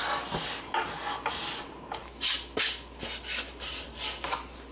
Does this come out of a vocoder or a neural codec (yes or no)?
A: no